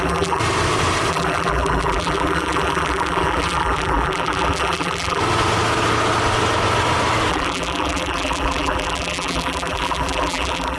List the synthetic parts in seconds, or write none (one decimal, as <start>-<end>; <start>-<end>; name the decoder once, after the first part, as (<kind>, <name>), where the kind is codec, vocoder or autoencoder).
0.0-0.4 (vocoder, BigVGAN v2); 1.1-5.2; 7.3-10.8